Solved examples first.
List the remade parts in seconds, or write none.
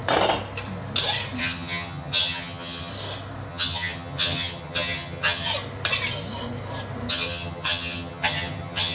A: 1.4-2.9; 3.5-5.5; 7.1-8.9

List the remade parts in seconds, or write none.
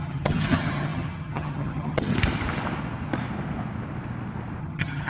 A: 0.0-2.1; 4.6-5.1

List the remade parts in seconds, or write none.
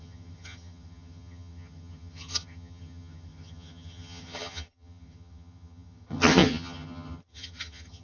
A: 0.0-8.0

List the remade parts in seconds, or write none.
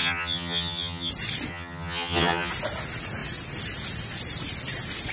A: 0.0-1.1; 1.5-2.5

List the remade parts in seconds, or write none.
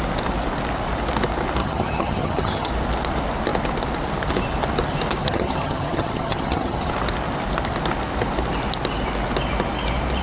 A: 1.6-2.7; 5.2-6.9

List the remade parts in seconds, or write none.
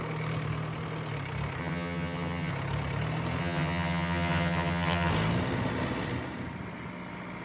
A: 1.6-2.5; 3.4-5.1